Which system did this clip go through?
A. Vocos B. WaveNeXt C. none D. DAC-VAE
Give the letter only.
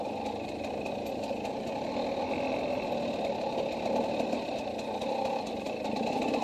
C